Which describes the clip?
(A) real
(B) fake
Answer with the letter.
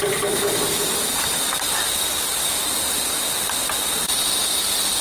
A